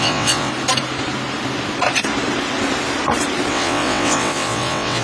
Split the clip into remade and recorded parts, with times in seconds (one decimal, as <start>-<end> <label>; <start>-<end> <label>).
0.0-0.5 remade; 0.5-3.5 recorded; 3.5-5.0 remade